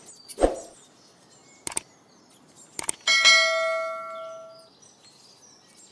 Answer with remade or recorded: recorded